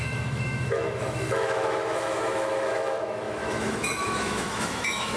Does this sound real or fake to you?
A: fake